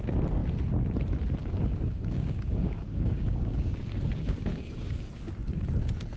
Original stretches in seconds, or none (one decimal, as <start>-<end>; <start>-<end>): 0.0-1.4; 5.1-6.2